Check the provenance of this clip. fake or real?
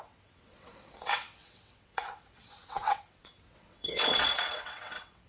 fake